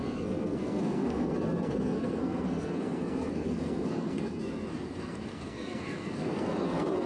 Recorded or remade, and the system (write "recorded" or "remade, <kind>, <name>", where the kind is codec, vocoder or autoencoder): remade, codec, SNAC